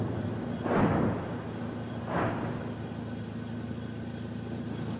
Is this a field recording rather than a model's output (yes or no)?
yes